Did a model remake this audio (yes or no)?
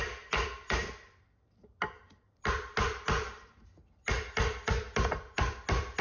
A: no